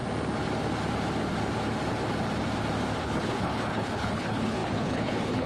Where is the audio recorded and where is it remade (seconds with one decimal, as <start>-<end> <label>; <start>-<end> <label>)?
0.0-3.0 recorded; 3.0-5.5 remade